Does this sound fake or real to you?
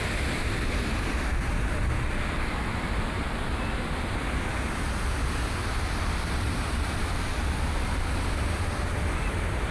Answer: real